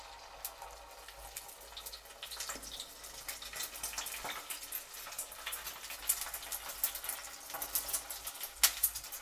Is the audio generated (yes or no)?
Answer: no